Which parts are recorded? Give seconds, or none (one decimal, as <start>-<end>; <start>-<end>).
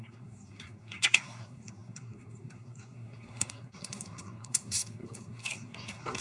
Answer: none